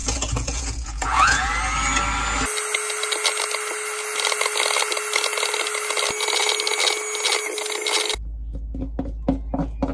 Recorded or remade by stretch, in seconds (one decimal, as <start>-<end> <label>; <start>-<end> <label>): 0.0-1.5 remade; 1.5-9.9 recorded